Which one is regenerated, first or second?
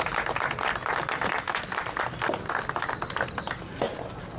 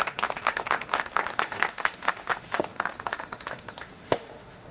second